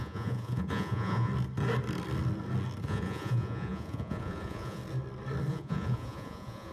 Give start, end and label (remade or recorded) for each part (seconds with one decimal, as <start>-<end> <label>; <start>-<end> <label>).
0.0-1.3 remade; 1.3-2.8 recorded; 2.8-4.8 remade; 4.8-5.5 recorded; 5.5-6.7 remade